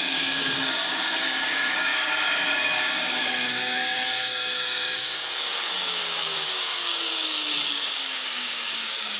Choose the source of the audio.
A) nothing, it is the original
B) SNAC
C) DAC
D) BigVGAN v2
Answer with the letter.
C